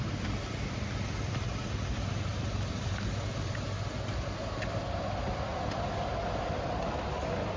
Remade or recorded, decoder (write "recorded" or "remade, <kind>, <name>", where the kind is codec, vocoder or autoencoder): recorded